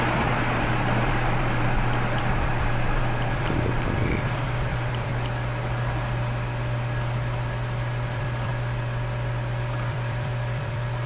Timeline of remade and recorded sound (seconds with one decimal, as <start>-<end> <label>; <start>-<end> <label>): 0.0-5.1 remade; 5.1-8.1 recorded; 8.1-8.5 remade; 8.5-9.9 recorded; 9.9-11.1 remade